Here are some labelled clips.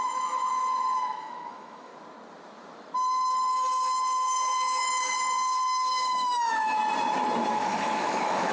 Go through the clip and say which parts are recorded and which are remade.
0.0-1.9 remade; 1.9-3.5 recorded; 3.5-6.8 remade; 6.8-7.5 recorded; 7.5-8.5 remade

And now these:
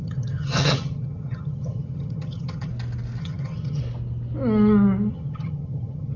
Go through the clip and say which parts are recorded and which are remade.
0.0-2.7 remade; 2.7-3.2 recorded; 3.2-3.8 remade; 3.8-5.1 recorded; 5.1-6.2 remade

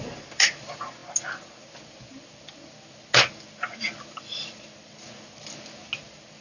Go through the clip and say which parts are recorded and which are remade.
0.0-6.4 recorded